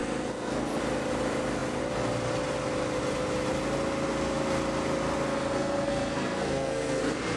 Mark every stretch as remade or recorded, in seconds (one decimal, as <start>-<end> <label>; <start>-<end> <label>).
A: 0.0-0.8 remade; 0.8-5.3 recorded; 5.3-7.0 remade; 7.0-7.4 recorded